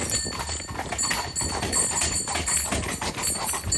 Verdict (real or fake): real